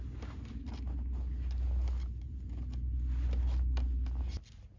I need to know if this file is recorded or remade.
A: recorded